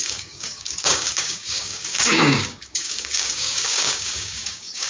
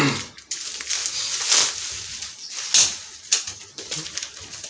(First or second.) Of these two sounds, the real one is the second